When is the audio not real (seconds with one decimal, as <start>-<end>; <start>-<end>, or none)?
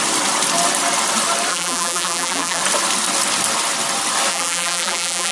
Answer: 1.5-2.6; 4.3-5.3